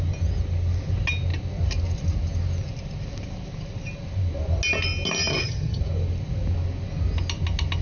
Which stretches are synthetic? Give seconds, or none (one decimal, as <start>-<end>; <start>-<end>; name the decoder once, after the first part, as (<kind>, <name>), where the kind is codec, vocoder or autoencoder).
5.3-5.8 (vocoder, HiFi-GAN)